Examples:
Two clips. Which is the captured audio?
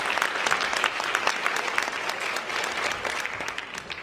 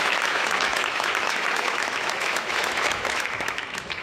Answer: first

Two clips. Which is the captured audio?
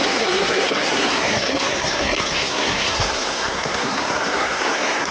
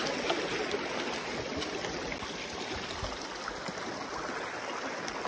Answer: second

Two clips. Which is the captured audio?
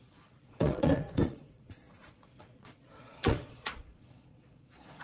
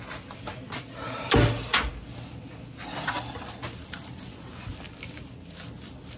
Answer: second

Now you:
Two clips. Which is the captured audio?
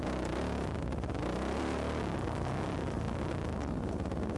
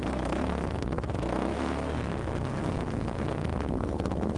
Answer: first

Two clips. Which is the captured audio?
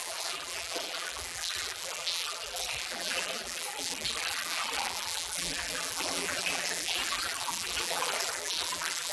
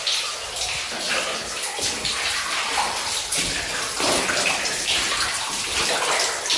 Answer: second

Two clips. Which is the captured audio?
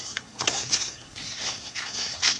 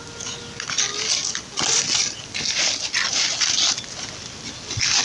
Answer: second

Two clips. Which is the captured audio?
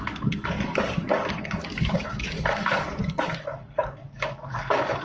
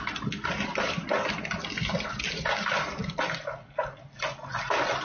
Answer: second